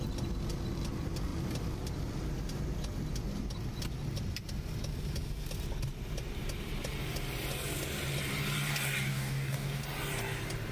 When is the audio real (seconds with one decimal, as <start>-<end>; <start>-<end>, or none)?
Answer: 0.0-9.1; 9.8-10.7